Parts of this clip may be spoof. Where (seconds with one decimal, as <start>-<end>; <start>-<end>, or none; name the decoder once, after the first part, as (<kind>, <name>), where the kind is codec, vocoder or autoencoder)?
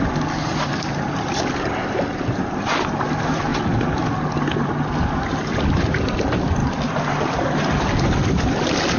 0.0-3.5 (vocoder, BigVGAN v2); 5.3-9.0